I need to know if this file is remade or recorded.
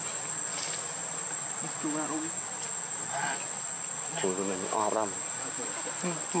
recorded